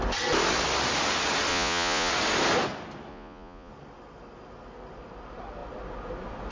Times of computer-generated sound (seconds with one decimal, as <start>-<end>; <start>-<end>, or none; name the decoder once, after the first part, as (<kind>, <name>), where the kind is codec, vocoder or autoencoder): 1.5-2.1 (vocoder, Vocos); 3.1-3.7